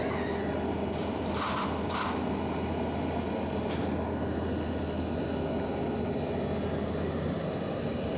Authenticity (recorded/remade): recorded